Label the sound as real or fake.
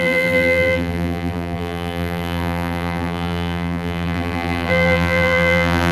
fake